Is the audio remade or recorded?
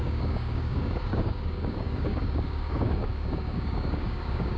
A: remade